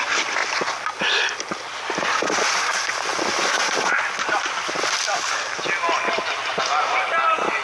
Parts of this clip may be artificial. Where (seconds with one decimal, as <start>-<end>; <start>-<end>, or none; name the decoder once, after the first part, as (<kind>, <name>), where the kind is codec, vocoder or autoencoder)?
none